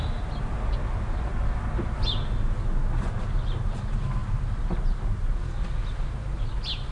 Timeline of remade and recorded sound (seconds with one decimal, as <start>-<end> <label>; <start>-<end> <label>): 0.0-6.9 recorded